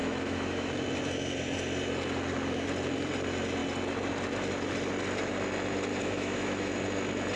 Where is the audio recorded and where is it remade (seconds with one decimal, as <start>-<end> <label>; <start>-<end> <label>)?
0.0-0.7 remade; 0.7-5.9 recorded; 5.9-6.7 remade; 6.7-7.4 recorded